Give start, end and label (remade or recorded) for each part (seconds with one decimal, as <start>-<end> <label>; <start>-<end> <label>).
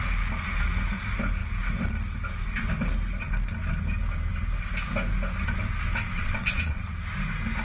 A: 0.0-6.1 recorded; 6.1-6.8 remade; 6.8-7.6 recorded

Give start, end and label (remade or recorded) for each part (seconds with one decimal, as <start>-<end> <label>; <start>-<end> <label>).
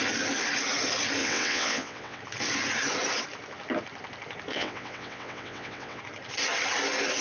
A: 0.0-1.2 recorded; 1.2-2.2 remade; 2.2-4.5 recorded; 4.5-6.0 remade; 6.0-7.2 recorded